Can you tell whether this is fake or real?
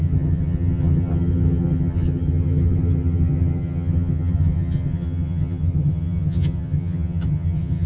fake